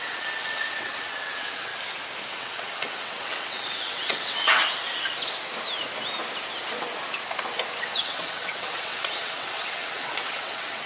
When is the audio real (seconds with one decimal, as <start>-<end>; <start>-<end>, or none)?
1.7-2.3; 4.6-7.8